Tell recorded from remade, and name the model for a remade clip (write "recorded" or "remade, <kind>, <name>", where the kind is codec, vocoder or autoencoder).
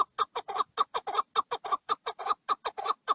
recorded